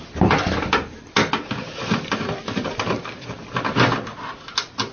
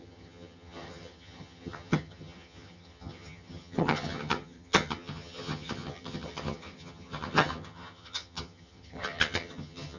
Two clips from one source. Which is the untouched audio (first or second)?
first